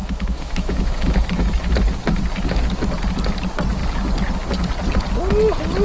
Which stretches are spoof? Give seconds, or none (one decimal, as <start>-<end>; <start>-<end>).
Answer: 0.0-1.7